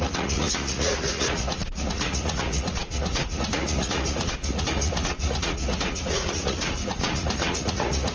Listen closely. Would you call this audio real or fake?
fake